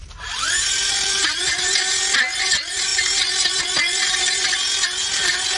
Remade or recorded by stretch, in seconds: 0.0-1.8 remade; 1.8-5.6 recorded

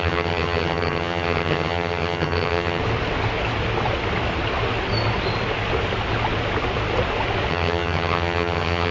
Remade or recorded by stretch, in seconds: 0.0-2.8 remade; 2.8-7.5 recorded; 7.5-8.9 remade